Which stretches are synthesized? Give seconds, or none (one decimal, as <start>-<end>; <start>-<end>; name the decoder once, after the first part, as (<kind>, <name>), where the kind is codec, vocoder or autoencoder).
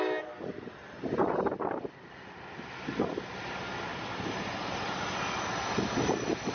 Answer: 1.2-1.9 (vocoder, BigVGAN v2); 3.9-5.2